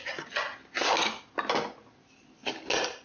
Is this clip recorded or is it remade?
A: recorded